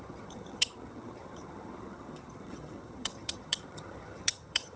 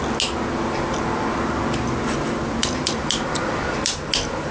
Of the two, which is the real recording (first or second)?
second